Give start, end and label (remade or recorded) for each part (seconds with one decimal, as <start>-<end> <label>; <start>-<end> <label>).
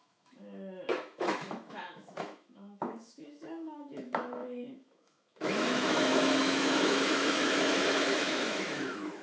0.0-9.2 remade